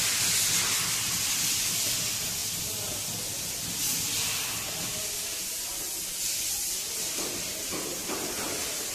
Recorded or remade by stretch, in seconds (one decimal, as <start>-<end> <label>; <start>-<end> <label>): 0.0-8.9 recorded